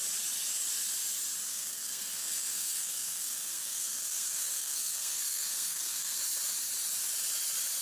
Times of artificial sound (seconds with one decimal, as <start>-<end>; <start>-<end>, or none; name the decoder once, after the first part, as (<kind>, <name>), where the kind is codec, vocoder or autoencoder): 1.5-6.2 (codec, SNAC)